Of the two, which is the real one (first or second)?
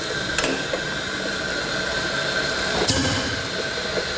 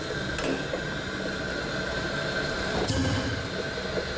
second